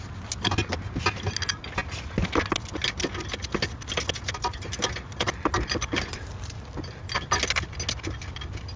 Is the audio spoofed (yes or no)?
no